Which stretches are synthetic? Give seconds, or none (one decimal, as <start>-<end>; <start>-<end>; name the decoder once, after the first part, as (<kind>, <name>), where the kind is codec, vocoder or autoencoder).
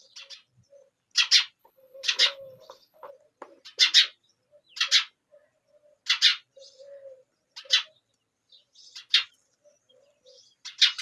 1.6-3.1 (codec, HILCodec)